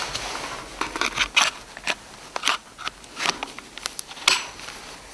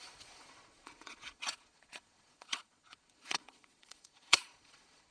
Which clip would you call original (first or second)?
first